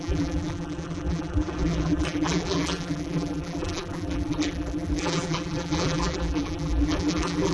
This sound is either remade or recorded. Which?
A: remade